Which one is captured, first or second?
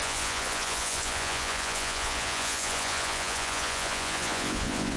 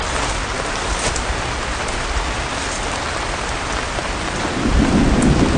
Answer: second